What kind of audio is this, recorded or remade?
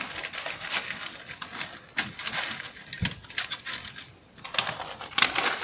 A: recorded